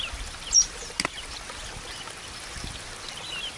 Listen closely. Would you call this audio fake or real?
real